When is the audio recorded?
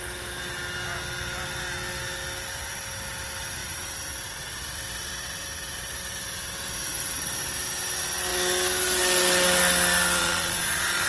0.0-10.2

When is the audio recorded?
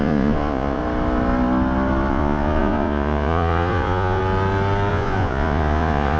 0.8-2.1; 4.2-4.9